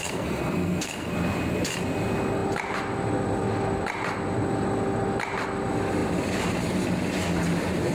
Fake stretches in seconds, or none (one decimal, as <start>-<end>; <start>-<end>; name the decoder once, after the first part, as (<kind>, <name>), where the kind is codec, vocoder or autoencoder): 0.0-1.1 (codec, SNAC)

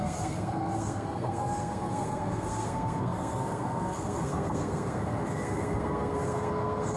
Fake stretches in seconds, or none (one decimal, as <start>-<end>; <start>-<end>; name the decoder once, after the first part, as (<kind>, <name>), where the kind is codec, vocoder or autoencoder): 0.0-7.0 (codec, SNAC)